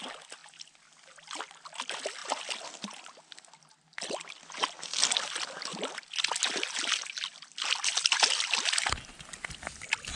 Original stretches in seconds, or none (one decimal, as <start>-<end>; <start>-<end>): 0.0-10.2